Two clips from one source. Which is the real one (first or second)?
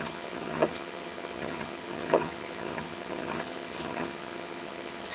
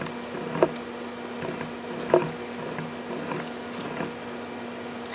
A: second